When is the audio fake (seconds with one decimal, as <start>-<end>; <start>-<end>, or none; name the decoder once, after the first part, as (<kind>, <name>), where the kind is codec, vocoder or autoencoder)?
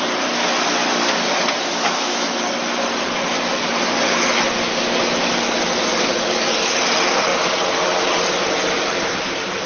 1.7-2.4 (autoencoder, DAC-VAE)